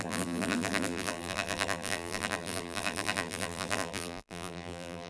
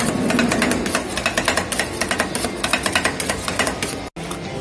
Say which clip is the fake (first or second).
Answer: first